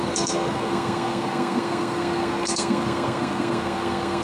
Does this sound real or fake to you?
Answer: fake